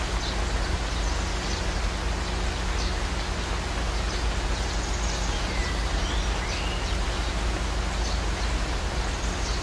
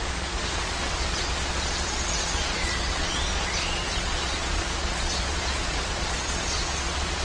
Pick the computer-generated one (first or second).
second